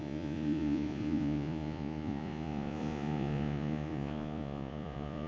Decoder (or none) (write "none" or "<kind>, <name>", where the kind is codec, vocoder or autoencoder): vocoder, Vocos